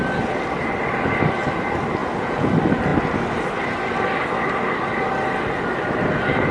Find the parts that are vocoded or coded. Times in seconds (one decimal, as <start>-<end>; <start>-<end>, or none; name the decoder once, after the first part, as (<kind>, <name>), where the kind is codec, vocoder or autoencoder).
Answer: 2.0-2.5 (vocoder, Vocos)